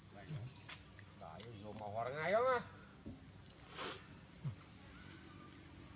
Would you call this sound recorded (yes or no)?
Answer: yes